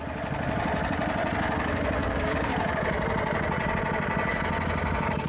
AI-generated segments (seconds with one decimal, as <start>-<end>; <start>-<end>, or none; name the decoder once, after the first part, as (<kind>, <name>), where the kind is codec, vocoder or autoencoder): 2.0-2.5 (codec, DAC)